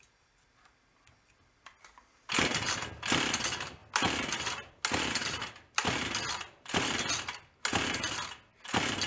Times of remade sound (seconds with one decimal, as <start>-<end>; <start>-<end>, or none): none